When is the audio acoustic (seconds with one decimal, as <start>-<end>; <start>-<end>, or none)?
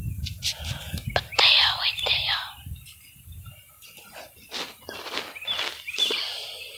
0.0-1.3; 3.8-6.8